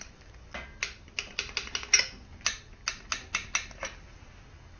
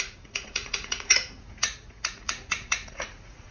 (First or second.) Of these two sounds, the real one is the first